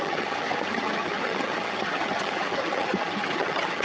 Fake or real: fake